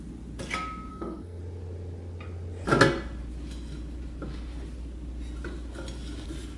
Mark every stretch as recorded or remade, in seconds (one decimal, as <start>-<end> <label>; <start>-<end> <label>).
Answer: 0.0-0.9 recorded; 0.9-1.4 remade; 1.4-6.6 recorded